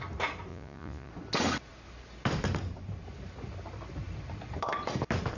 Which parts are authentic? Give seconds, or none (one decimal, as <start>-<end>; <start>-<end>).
0.0-0.5; 1.1-5.4